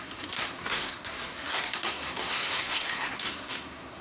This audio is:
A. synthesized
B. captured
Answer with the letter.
A